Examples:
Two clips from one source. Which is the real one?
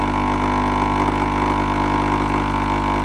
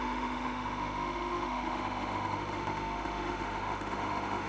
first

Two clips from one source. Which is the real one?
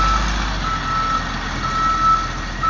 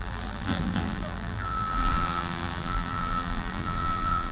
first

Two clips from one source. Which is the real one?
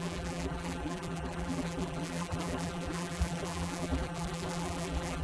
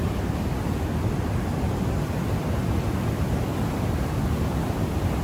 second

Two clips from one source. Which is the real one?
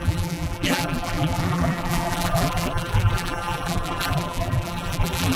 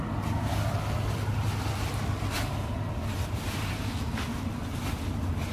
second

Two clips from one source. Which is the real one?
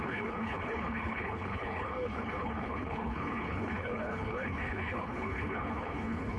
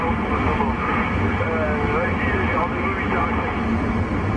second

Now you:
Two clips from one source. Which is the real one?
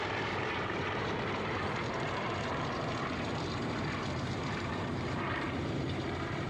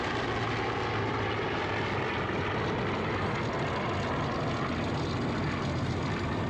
second